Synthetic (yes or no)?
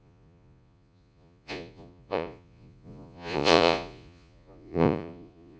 yes